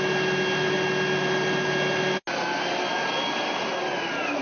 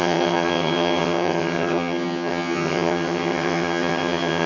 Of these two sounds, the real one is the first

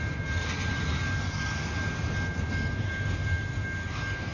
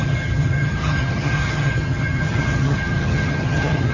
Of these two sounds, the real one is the first